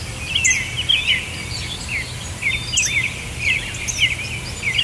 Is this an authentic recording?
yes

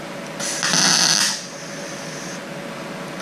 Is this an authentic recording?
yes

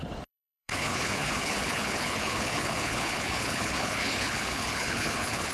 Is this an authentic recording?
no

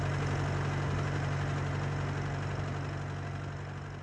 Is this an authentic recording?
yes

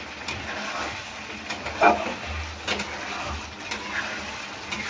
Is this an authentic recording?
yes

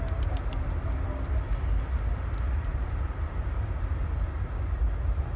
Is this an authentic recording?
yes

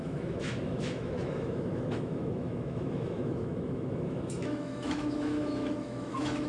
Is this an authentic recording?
no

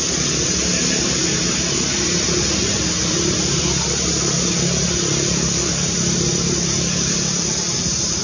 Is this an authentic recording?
yes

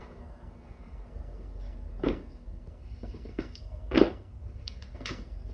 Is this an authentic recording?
no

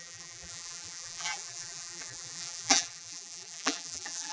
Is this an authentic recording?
no